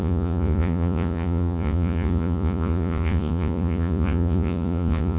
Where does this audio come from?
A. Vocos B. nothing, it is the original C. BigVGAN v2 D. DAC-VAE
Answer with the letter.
A